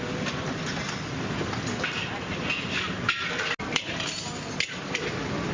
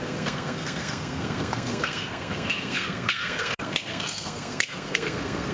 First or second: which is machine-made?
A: second